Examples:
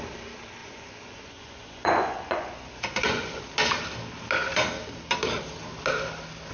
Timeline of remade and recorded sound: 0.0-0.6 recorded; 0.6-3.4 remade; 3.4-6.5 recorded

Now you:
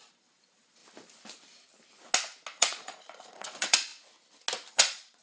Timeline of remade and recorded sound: 0.0-0.8 remade; 0.8-2.6 recorded; 2.6-3.9 remade; 3.9-4.7 recorded; 4.7-5.2 remade